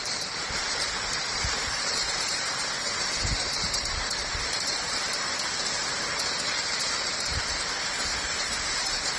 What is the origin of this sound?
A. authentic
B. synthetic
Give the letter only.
B